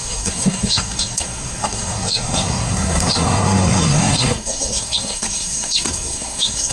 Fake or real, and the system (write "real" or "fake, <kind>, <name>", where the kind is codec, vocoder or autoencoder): fake, codec, SNAC